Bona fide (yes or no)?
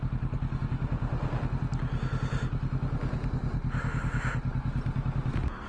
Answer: yes